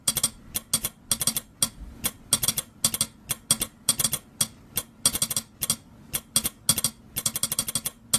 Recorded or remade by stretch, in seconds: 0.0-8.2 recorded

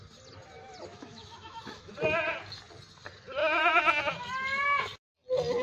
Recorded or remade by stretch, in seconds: 0.0-0.9 recorded; 0.9-1.9 remade; 1.9-3.4 recorded; 3.4-4.0 remade; 4.0-5.6 recorded

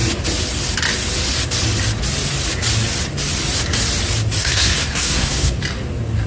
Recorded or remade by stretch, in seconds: 0.0-4.4 recorded; 4.4-5.6 remade; 5.6-6.3 recorded

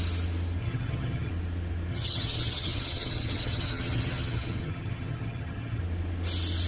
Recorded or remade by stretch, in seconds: 0.0-0.6 recorded; 0.6-1.3 remade; 1.3-1.9 recorded; 1.9-5.8 remade; 5.8-6.7 recorded

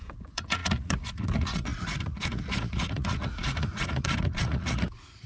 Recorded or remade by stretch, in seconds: 0.0-5.3 remade

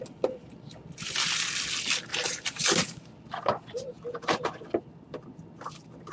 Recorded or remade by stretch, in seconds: 0.0-2.1 recorded; 2.1-3.1 remade; 3.1-6.1 recorded